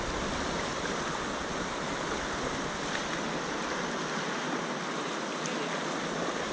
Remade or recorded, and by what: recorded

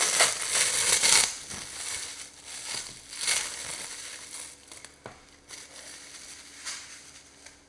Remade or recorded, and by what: recorded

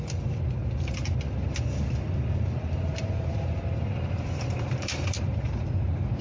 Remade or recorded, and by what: remade, vocoder, BigVGAN v2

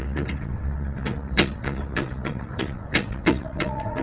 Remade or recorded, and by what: remade, vocoder, WaveNeXt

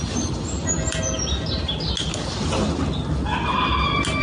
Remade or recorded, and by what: recorded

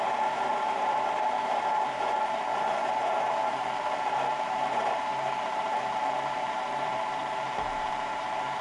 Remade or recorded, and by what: remade, vocoder, BigVGAN v2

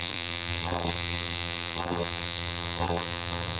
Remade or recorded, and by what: remade, vocoder, BigVGAN v2